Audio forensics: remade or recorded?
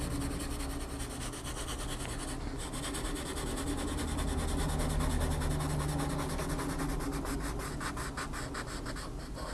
recorded